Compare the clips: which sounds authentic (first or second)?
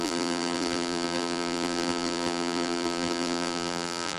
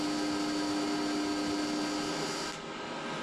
second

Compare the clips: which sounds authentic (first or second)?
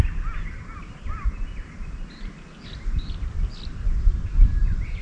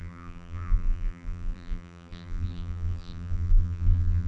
first